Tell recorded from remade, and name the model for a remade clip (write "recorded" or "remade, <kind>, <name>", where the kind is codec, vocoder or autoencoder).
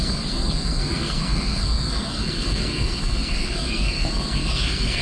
remade, codec, SNAC